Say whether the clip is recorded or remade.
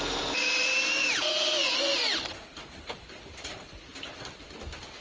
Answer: remade